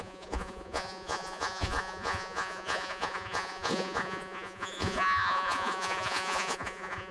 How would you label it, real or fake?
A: fake